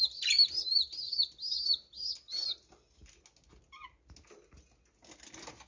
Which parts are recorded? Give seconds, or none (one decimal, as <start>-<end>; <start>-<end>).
0.0-5.7